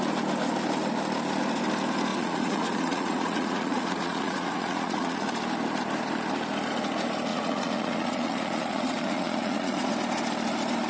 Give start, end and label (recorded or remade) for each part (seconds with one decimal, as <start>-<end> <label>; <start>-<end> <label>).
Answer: 0.0-2.1 recorded; 2.1-5.2 remade; 5.2-7.3 recorded; 7.3-9.9 remade; 9.9-10.9 recorded